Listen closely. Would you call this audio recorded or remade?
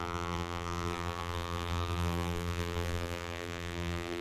remade